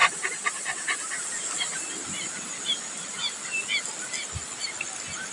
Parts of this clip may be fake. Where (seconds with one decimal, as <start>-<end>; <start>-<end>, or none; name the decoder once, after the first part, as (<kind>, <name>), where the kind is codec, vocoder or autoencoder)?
none